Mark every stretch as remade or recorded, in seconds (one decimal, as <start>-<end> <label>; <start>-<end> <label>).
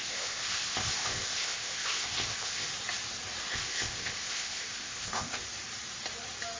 0.0-2.7 remade; 2.7-3.5 recorded; 3.5-5.4 remade; 5.4-6.6 recorded